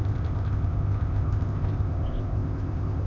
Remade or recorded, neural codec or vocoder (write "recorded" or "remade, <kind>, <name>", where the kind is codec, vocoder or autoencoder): remade, codec, ZipCodec